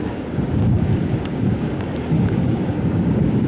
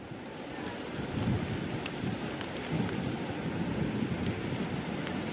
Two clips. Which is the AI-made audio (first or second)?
first